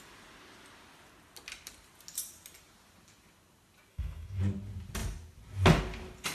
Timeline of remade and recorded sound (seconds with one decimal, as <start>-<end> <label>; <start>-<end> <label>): 0.0-3.9 recorded; 3.9-4.4 remade; 4.4-6.3 recorded